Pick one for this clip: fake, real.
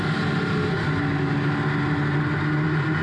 real